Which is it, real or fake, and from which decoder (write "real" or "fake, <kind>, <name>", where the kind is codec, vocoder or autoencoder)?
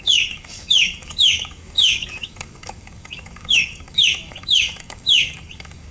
fake, codec, DAC